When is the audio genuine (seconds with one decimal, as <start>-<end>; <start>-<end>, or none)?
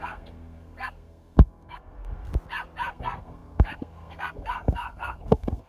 2.3-2.9